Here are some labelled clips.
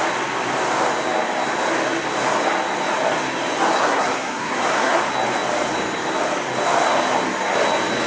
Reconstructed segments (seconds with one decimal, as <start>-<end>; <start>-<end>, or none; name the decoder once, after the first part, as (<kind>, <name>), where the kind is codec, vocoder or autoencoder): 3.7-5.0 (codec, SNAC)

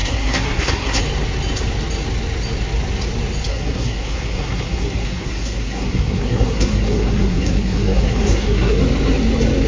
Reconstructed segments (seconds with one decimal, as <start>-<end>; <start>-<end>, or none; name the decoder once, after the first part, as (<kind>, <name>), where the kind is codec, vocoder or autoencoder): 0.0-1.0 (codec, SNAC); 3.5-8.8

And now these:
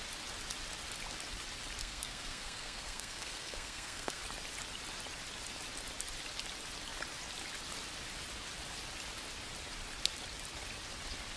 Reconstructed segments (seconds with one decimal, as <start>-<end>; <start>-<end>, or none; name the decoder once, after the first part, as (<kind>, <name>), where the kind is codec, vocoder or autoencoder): 1.8-4.2 (codec, SNAC)